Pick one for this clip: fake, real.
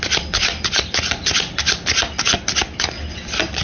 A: real